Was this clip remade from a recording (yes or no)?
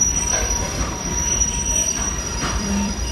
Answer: yes